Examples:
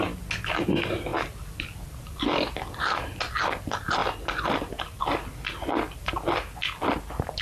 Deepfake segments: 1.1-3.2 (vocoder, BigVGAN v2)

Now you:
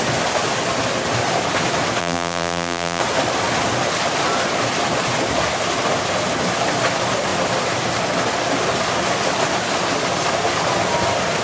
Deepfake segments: 2.0-3.0 (vocoder, BigVGAN v2)

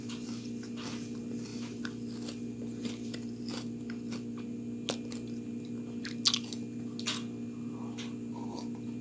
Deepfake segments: 1.5-4.4 (vocoder, BigVGAN v2)

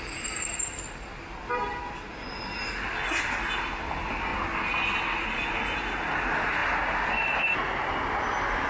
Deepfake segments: none

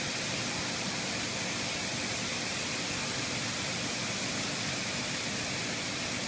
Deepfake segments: none

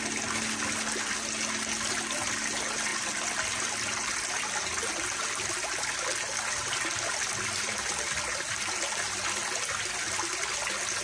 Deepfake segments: none

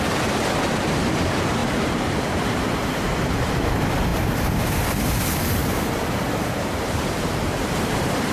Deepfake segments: 1.6-3.1 (vocoder, BigVGAN v2); 5.6-8.3